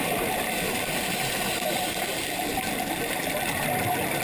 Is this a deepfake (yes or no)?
no